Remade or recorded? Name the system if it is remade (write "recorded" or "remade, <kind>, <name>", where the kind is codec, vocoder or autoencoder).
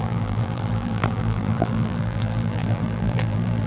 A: remade, vocoder, BigVGAN v2